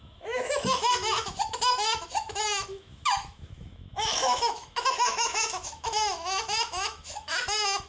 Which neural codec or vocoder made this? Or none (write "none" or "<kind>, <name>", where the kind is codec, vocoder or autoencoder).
autoencoder, DAC-VAE